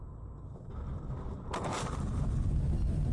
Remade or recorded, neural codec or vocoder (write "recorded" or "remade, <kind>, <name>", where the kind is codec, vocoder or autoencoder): recorded